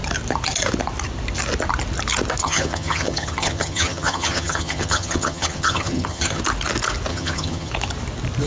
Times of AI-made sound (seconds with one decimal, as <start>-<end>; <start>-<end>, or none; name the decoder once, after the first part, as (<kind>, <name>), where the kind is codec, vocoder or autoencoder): 2.4-6.4 (vocoder, HiFi-GAN); 7.1-7.7

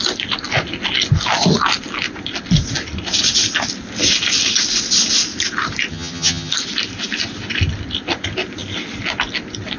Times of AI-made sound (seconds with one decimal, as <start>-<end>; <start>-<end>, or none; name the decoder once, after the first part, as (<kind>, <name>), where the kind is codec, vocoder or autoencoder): 5.9-6.5 (vocoder, HiFi-GAN)

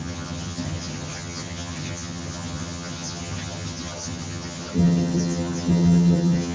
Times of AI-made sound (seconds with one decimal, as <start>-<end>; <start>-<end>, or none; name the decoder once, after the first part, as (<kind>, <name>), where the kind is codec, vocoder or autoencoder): 0.0-6.5 (vocoder, HiFi-GAN)

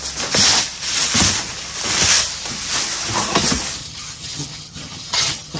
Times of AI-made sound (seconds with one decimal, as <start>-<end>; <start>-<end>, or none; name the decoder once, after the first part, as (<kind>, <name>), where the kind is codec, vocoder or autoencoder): 3.8-5.6 (vocoder, HiFi-GAN)